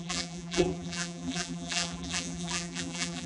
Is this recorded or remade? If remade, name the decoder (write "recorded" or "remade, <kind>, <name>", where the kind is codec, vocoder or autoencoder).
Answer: remade, vocoder, BigVGAN v2